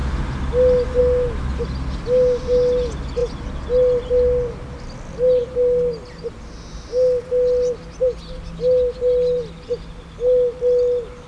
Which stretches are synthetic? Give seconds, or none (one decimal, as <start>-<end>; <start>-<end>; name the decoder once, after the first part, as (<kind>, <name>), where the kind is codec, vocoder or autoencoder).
none